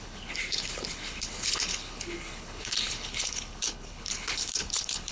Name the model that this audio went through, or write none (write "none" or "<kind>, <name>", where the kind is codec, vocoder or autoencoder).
codec, HILCodec